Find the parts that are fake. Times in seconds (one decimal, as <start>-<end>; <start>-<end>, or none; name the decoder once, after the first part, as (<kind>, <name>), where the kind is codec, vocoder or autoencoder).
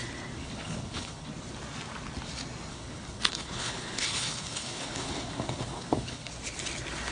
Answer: 0.4-1.3 (codec, HILCodec); 2.7-6.3